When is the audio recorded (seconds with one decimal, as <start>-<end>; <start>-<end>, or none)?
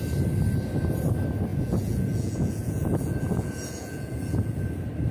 0.0-1.5; 4.6-5.1